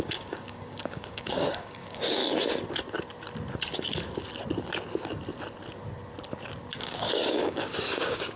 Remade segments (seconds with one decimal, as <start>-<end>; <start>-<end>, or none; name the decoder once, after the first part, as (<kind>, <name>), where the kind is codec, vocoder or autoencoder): 0.0-2.2 (codec, DAC); 6.8-8.4